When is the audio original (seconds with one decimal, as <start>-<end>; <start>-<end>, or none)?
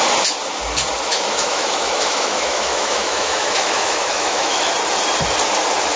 0.0-1.1; 4.7-6.0